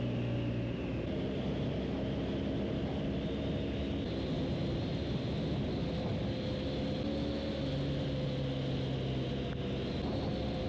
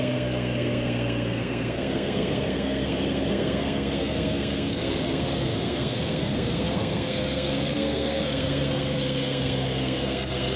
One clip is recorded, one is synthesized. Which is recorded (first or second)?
first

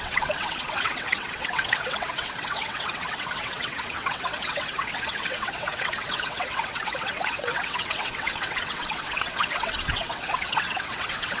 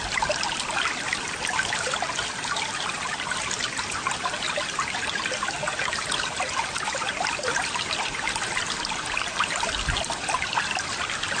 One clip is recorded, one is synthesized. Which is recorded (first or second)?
second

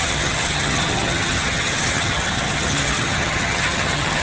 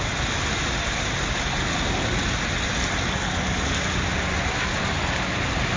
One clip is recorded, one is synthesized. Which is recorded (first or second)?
second